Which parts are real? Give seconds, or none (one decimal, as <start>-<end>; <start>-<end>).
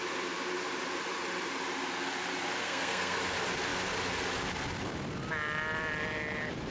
0.0-2.6; 3.2-6.7